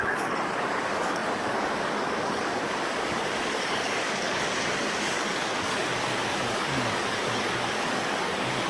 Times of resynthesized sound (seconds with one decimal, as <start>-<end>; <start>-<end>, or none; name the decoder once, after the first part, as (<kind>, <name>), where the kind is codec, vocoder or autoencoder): 0.0-8.7 (codec, DAC)